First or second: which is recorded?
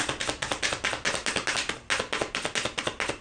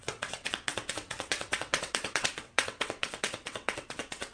first